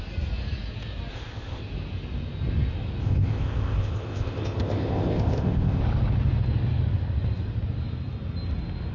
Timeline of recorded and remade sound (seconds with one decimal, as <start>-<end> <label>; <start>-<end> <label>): 0.0-1.1 recorded; 1.1-1.6 remade; 1.6-3.0 recorded; 3.0-5.8 remade; 5.8-8.9 recorded